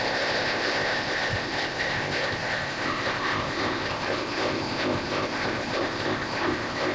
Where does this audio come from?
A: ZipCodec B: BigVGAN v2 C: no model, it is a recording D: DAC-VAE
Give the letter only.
A